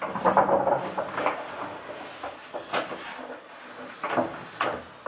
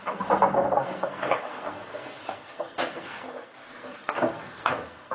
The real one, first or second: first